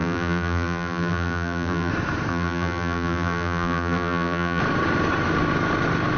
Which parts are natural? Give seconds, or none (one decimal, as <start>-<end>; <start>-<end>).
1.9-2.3; 4.6-6.2